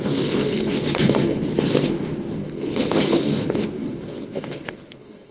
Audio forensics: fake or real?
fake